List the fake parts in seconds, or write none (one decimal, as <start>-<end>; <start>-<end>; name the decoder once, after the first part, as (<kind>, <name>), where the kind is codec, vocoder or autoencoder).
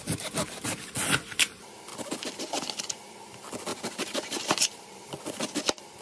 3.7-5.1 (vocoder, BigVGAN v2)